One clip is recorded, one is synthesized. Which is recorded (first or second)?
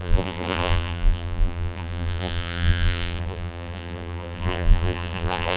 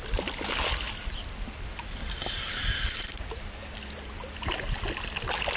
second